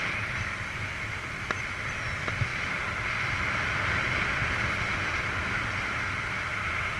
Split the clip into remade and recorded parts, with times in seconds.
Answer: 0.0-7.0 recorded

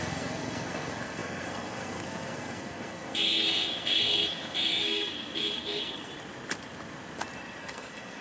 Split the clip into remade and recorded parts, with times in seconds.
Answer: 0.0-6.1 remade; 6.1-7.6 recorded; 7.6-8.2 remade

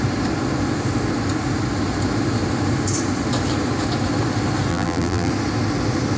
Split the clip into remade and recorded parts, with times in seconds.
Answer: 0.0-4.7 recorded; 4.7-5.3 remade; 5.3-6.2 recorded